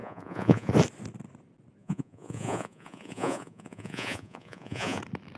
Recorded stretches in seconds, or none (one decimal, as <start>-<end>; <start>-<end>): 0.7-1.8; 5.0-5.4